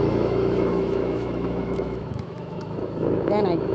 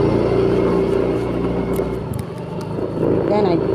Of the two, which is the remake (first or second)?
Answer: first